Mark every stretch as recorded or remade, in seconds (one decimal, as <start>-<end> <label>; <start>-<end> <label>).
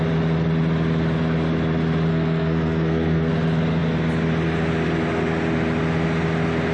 0.0-2.1 recorded; 2.1-3.3 remade; 3.3-6.7 recorded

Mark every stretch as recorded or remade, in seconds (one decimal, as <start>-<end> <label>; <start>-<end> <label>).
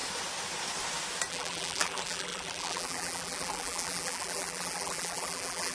0.0-1.3 recorded; 1.3-5.7 remade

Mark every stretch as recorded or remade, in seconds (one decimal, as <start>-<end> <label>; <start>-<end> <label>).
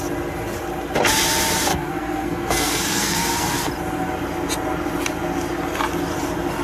0.0-1.7 recorded; 1.7-3.7 remade; 3.7-6.6 recorded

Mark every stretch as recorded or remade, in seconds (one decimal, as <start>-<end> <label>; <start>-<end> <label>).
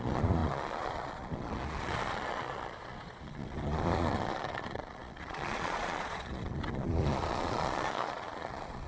0.0-8.9 remade